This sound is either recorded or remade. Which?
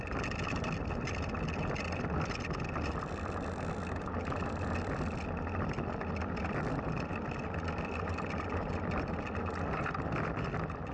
recorded